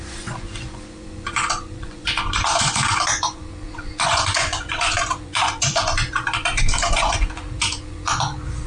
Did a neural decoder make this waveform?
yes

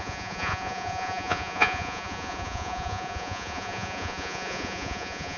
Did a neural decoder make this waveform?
yes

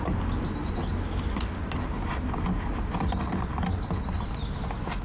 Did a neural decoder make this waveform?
no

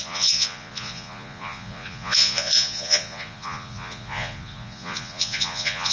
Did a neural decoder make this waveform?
yes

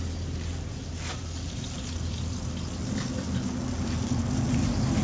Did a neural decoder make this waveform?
no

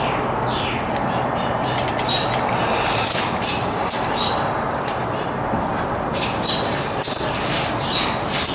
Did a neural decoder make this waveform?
no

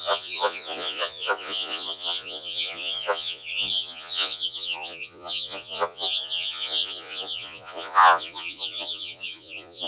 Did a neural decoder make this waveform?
yes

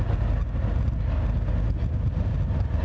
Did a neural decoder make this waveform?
no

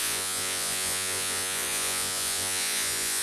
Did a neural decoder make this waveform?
yes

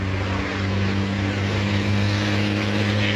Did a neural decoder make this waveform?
no